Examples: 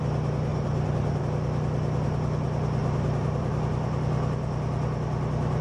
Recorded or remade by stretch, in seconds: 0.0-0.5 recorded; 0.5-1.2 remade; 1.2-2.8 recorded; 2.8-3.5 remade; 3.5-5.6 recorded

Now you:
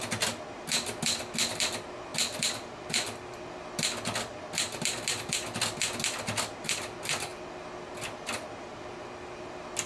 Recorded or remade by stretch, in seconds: 0.0-9.9 recorded

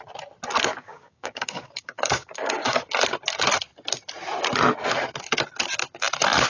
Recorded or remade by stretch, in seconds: 0.0-0.7 recorded; 0.7-2.8 remade; 2.8-6.5 recorded

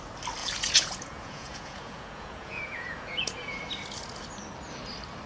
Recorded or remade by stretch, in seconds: 0.0-0.4 recorded; 0.4-3.6 remade; 3.6-5.3 recorded

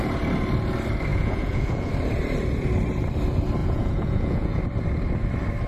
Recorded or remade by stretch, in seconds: 0.0-1.1 recorded; 1.1-1.9 remade; 1.9-3.6 recorded; 3.6-4.6 remade; 4.6-5.7 recorded

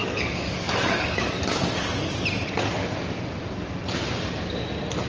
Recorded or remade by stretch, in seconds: 0.0-1.3 remade; 1.3-5.1 recorded

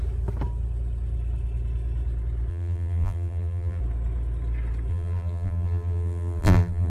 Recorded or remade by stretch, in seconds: 0.0-2.5 recorded; 2.5-3.8 remade; 3.8-4.9 recorded; 4.9-6.9 remade